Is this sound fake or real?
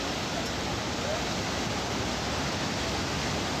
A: real